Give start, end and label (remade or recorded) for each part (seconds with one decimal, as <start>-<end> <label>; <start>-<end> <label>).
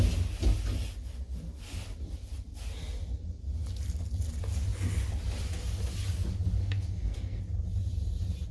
0.0-6.6 recorded; 6.6-7.4 remade; 7.4-8.5 recorded